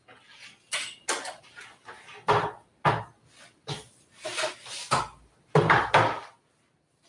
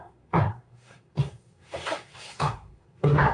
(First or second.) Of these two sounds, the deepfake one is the second